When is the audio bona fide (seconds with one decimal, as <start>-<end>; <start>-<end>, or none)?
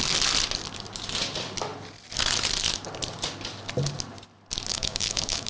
0.0-4.7